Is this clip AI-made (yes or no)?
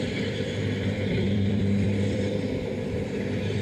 yes